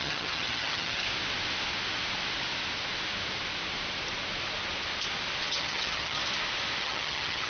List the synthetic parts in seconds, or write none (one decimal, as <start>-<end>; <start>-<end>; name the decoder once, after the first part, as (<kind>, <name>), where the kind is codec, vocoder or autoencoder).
0.0-1.0 (vocoder, HiFi-GAN); 5.5-6.2; 6.8-7.5